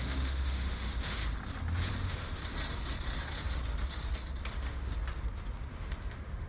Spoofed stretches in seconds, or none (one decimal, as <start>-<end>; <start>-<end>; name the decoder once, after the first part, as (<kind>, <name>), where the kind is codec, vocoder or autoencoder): 0.0-1.2 (autoencoder, DAC-VAE); 1.9-2.4; 4.5-4.9; 5.7-6.5